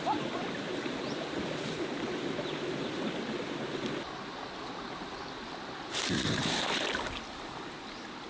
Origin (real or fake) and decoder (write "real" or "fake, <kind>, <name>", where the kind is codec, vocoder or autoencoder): real